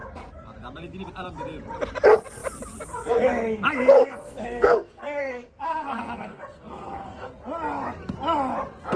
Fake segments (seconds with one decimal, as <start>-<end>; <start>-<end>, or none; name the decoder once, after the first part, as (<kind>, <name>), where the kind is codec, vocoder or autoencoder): 4.0-7.3 (codec, SNAC)